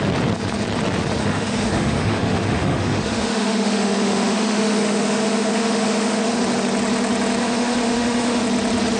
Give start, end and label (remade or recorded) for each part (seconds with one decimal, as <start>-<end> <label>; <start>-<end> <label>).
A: 0.0-1.2 recorded; 1.2-6.4 remade; 6.4-7.4 recorded; 7.4-8.4 remade; 8.4-9.0 recorded